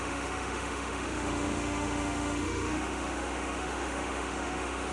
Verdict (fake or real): fake